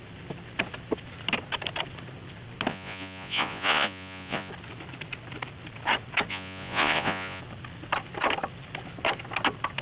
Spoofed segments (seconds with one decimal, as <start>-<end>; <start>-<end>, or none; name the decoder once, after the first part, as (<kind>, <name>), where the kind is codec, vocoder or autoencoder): 2.7-4.5 (vocoder, Vocos); 6.3-7.4